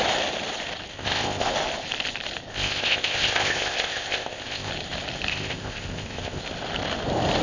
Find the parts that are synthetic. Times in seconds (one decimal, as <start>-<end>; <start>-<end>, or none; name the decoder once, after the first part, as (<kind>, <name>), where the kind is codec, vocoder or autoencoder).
0.9-1.5 (codec, ZipCodec); 2.5-4.7; 5.3-6.4